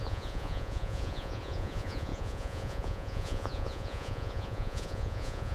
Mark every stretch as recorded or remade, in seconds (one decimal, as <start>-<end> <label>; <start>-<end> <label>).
0.0-5.5 remade